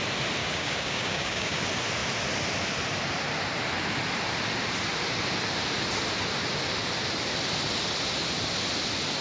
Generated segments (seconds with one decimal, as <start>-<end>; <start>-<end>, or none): 0.4-1.6